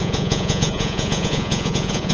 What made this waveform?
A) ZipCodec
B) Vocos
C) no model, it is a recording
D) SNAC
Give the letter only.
B